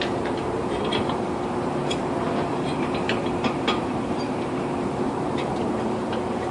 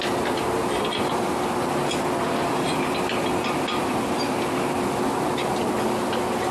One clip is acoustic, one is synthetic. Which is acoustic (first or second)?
second